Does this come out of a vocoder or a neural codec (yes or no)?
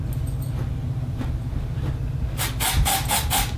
no